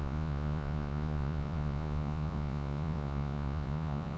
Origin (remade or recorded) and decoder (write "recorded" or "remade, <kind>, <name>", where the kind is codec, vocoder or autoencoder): remade, vocoder, Vocos